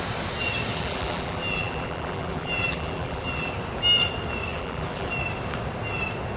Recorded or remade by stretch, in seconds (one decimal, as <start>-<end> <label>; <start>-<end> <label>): 0.0-0.7 recorded; 0.7-3.5 remade; 3.5-4.5 recorded; 4.5-5.1 remade; 5.1-6.4 recorded